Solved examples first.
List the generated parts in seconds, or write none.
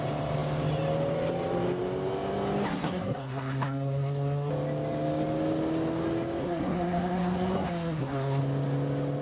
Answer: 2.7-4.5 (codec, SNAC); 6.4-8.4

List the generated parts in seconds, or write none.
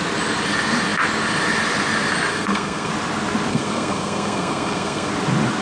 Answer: 2.3-2.9 (codec, SNAC); 3.5-5.1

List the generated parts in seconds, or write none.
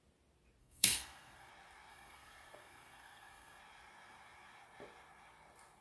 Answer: 0.6-1.5 (codec, SNAC); 1.9-3.6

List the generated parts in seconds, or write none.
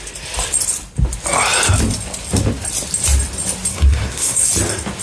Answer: 3.7-4.5 (codec, SNAC)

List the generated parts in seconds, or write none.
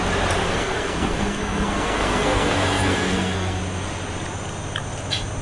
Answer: 0.4-3.6 (codec, SNAC)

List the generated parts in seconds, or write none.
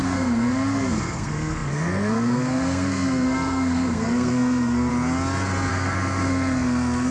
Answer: 0.0-4.9 (codec, SNAC); 5.7-7.1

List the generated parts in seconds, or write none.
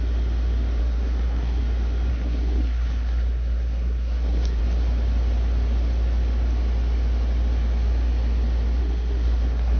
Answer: 0.8-1.6 (codec, SNAC); 2.1-4.6; 8.8-9.8